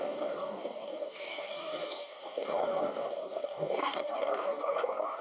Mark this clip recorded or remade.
remade